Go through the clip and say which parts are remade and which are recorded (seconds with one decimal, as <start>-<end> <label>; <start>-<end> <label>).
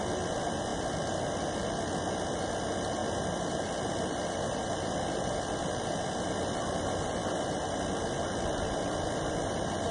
0.0-9.9 recorded